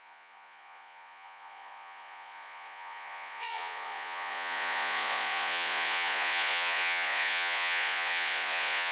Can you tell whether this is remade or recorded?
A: remade